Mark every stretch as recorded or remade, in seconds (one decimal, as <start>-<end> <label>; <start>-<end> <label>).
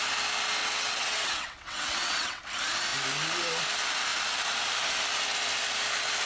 0.0-0.6 recorded; 0.6-2.4 remade; 2.4-6.3 recorded